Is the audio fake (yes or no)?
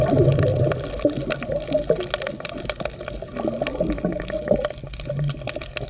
no